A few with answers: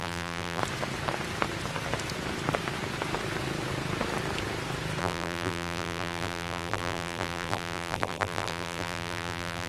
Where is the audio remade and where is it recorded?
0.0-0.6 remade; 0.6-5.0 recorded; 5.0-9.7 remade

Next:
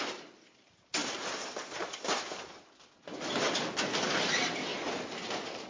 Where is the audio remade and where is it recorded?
0.0-4.7 recorded; 4.7-5.7 remade